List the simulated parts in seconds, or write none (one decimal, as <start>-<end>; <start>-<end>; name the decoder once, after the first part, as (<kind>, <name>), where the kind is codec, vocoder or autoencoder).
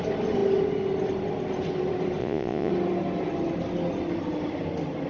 2.2-2.7 (vocoder, Vocos)